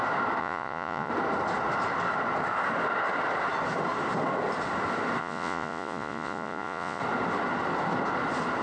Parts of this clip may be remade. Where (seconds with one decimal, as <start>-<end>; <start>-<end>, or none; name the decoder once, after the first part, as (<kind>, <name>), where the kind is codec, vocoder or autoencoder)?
0.4-1.1 (vocoder, Vocos); 5.2-7.0